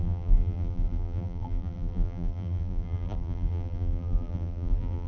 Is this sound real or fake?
fake